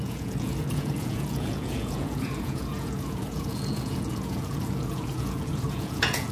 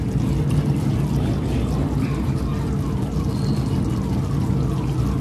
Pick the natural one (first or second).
second